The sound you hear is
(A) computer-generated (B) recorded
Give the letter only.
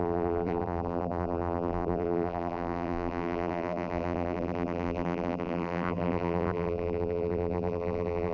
A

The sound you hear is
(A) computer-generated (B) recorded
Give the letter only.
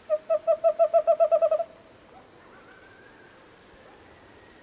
B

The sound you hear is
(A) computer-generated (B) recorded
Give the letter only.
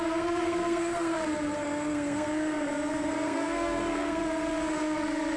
A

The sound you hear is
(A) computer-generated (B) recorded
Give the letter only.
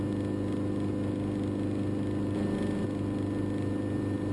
B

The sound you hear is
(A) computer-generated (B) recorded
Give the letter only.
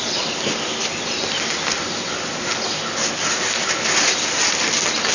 B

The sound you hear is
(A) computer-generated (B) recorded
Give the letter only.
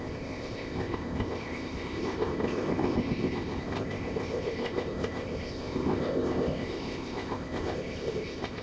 A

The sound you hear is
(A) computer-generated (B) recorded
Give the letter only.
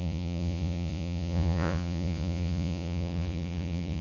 A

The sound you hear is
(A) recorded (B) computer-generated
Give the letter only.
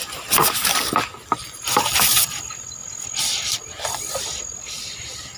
B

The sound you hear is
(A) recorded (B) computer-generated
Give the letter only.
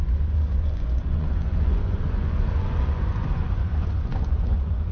B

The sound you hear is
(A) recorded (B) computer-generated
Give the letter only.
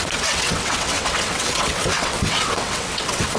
B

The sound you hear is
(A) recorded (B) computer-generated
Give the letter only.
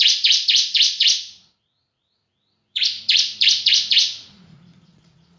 B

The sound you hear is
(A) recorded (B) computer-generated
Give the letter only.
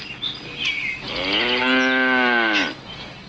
A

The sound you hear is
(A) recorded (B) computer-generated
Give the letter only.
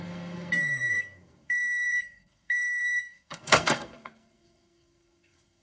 B